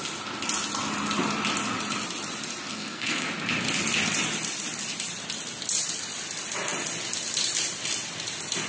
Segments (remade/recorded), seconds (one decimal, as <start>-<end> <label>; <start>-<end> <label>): 0.0-2.7 recorded; 2.7-3.3 remade; 3.3-8.7 recorded